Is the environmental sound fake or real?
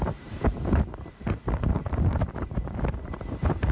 fake